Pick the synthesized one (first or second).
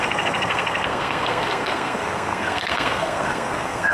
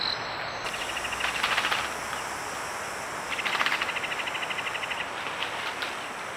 first